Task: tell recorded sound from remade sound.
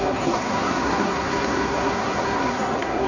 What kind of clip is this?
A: remade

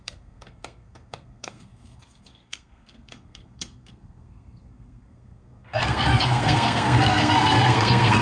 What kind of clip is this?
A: remade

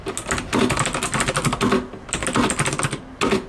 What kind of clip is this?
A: recorded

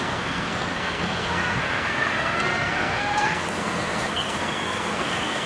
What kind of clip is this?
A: remade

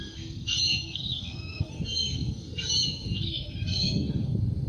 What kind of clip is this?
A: remade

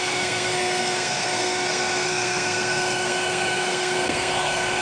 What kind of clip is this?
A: remade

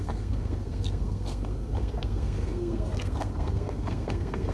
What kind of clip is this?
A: remade